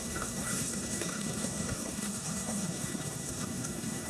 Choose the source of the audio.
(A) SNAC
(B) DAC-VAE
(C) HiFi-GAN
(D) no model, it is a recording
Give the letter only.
A